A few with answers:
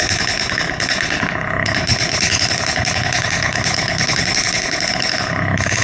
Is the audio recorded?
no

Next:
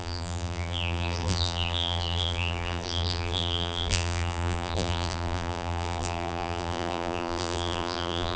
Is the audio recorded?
no